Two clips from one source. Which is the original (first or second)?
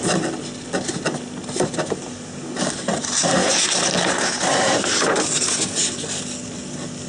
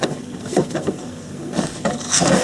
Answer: first